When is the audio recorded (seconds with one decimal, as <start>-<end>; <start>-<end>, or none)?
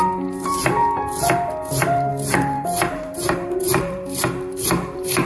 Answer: none